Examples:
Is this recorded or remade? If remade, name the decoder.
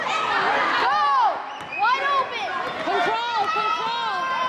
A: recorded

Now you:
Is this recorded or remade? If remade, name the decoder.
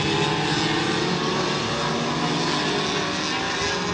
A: recorded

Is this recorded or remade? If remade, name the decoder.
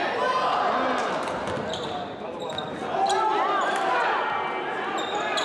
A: recorded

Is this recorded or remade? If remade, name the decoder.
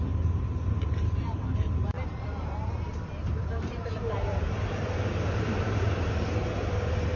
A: remade, vocoder, BigVGAN v2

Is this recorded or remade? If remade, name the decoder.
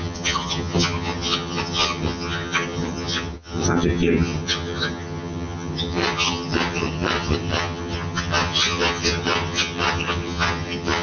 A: remade, vocoder, HiFi-GAN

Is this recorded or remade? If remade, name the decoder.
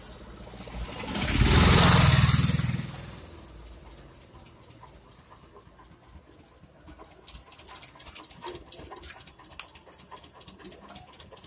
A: recorded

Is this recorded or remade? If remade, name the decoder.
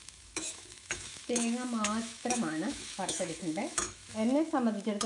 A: remade, autoencoder, DAC-VAE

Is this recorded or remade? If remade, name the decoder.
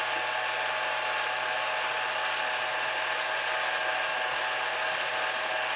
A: recorded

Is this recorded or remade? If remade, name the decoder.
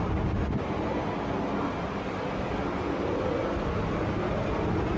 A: recorded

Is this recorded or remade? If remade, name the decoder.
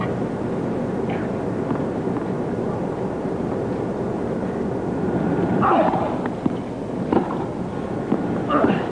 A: recorded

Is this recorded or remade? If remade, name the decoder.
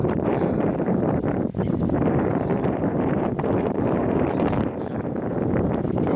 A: remade, vocoder, BigVGAN v2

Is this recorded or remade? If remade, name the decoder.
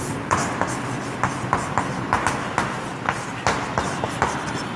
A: recorded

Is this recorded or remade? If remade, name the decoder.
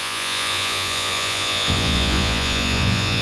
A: remade, vocoder, Vocos